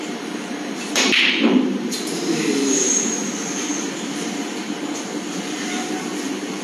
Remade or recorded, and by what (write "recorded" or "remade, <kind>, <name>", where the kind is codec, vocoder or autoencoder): remade, vocoder, BigVGAN v2